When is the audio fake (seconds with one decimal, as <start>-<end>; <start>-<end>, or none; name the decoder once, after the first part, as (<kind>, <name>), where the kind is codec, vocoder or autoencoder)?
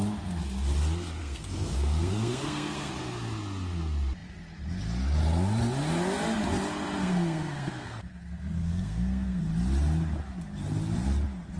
1.2-2.9 (codec, SNAC); 7.0-9.4